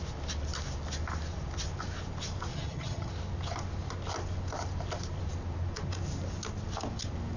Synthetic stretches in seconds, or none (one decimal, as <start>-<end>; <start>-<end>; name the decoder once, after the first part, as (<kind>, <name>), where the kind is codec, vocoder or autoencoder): 2.5-3.1 (vocoder, HiFi-GAN)